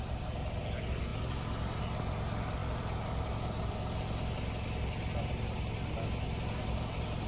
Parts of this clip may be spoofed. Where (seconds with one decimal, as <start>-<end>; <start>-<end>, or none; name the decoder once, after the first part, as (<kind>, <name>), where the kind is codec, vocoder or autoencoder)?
none